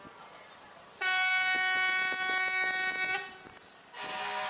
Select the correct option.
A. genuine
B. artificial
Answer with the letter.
A